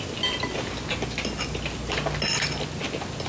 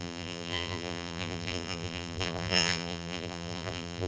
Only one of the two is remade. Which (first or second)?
second